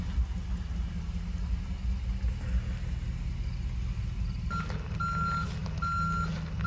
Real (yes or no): yes